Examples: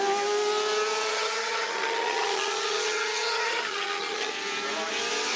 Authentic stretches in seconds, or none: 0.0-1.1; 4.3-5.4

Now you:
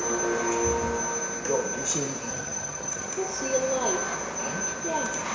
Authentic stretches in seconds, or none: 0.0-2.3; 3.1-5.3

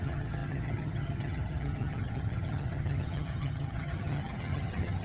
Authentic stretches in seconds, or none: none

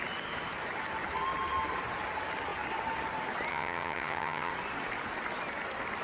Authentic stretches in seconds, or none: 0.0-3.5; 4.5-6.0

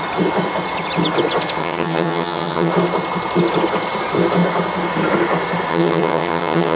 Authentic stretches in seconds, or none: 0.0-1.6; 2.7-5.7

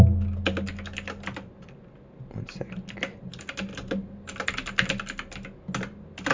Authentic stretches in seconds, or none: 0.0-6.3